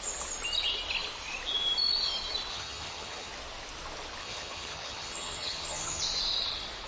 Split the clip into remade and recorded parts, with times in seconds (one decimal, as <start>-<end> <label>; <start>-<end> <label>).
0.0-2.5 recorded; 2.5-3.3 remade; 3.3-4.2 recorded; 4.2-6.0 remade; 6.0-6.9 recorded